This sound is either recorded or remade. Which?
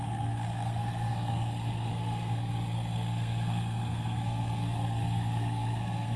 remade